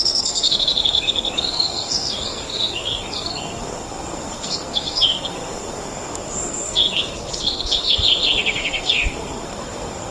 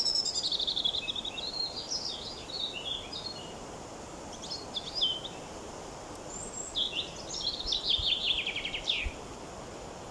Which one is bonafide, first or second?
second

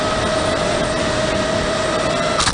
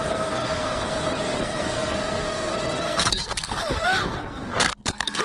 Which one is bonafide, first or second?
first